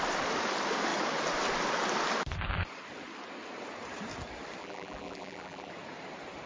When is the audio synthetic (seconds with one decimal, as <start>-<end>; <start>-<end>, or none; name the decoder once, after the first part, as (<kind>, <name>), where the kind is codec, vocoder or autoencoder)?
4.6-5.7 (vocoder, BigVGAN v2)